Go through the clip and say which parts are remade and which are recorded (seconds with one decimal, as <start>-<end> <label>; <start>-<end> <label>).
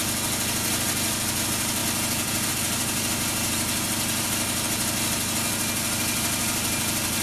0.0-7.2 recorded